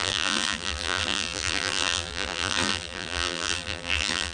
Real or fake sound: fake